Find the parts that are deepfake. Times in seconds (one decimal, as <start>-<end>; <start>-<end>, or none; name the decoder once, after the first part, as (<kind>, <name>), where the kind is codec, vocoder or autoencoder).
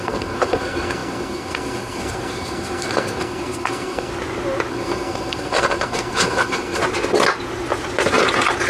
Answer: 0.0-4.1 (codec, SNAC); 4.7-6.8